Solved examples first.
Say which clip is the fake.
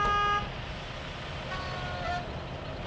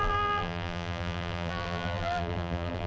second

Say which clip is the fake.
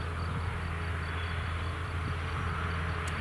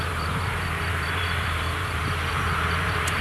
second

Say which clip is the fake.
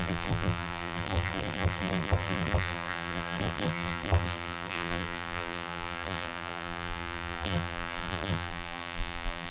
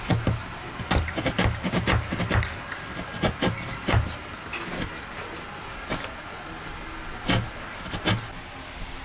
first